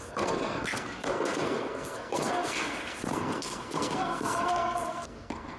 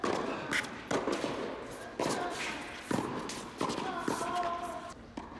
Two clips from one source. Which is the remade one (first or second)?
first